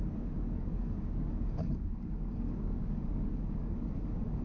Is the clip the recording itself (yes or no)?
no